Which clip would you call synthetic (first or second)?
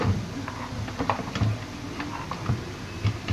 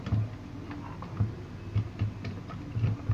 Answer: first